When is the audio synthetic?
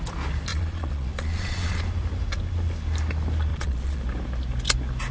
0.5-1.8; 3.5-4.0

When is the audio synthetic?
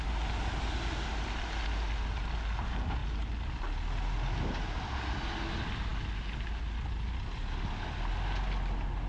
none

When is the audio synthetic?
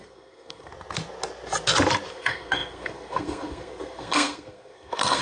0.0-0.7; 2.1-5.2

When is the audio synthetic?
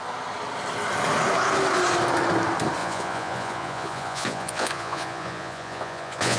2.8-6.4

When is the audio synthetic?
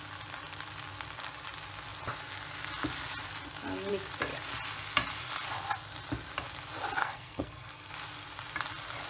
7.0-7.9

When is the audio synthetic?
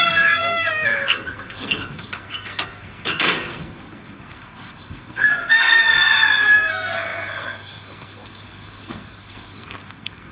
0.0-10.3